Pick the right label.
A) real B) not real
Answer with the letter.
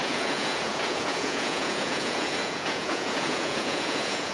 B